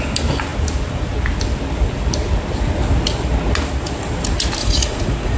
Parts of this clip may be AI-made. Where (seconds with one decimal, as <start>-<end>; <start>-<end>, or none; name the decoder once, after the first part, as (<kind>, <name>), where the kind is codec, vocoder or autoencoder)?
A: 4.6-5.4 (vocoder, Vocos)